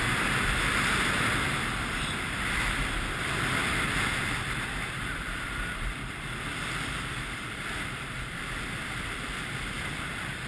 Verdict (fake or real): fake